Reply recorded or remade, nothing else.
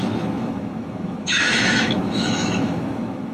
remade